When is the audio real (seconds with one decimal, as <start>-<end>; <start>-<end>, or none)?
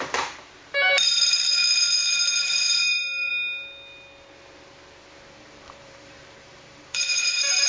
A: 1.6-2.4; 3.3-5.4